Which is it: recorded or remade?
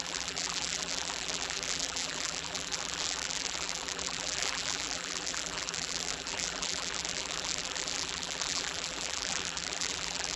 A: remade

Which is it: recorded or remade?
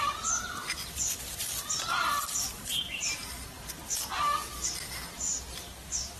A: remade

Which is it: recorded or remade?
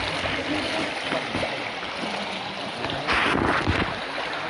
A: recorded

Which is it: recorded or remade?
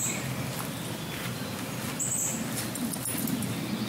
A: recorded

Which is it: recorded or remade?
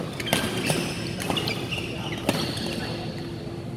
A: recorded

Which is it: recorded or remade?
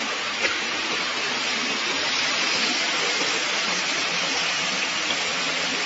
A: remade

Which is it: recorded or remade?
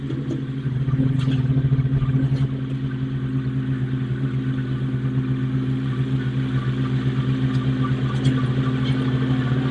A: recorded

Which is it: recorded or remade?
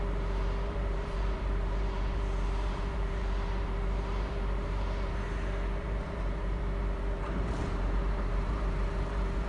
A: remade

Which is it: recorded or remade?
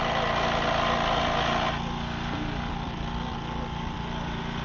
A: recorded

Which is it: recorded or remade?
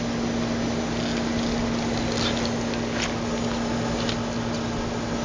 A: recorded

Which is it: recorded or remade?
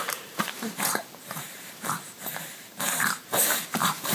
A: remade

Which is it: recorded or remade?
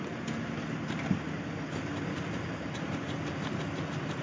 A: recorded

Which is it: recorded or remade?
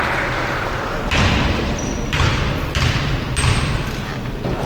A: recorded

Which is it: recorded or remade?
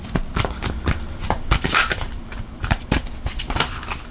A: remade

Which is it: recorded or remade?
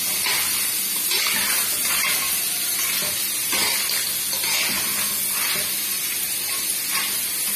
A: recorded